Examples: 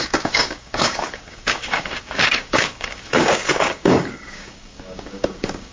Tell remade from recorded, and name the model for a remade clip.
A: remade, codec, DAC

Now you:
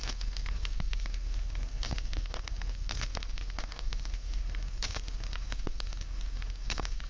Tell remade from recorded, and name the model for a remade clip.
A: remade, codec, SNAC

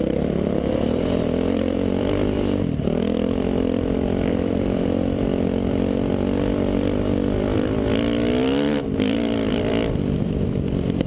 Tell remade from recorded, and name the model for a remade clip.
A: remade, vocoder, BigVGAN v2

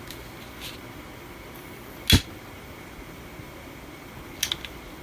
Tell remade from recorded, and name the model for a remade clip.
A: recorded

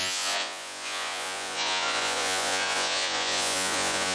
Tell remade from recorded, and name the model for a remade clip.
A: remade, vocoder, Vocos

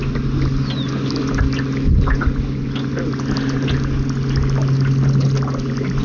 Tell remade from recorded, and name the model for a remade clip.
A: recorded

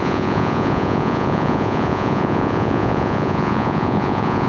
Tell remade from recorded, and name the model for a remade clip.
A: remade, vocoder, Vocos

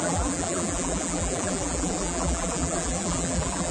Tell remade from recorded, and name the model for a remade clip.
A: remade, vocoder, BigVGAN v2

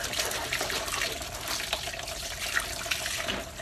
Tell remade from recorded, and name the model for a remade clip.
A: recorded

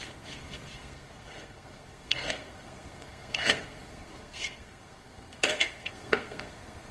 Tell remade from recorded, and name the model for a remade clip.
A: remade, codec, SNAC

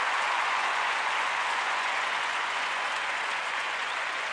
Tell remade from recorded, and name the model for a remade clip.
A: remade, vocoder, Vocos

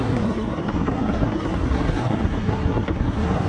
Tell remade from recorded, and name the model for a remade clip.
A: remade, codec, SNAC